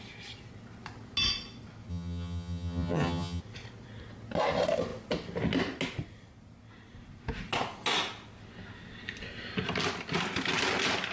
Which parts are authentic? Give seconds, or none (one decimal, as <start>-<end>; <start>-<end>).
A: 0.0-1.9; 3.4-11.1